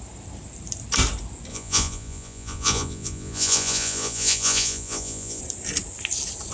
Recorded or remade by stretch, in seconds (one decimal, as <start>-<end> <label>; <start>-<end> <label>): 0.0-1.5 recorded; 1.5-5.4 remade; 5.4-6.5 recorded